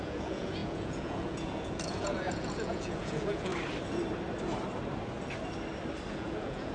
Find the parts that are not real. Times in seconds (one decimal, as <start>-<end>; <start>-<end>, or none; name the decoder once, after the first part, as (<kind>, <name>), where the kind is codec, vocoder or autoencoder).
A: 0.0-3.5 (vocoder, Vocos); 6.1-6.7